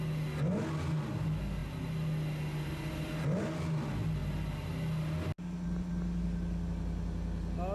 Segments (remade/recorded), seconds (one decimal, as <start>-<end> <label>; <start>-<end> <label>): 0.0-7.7 recorded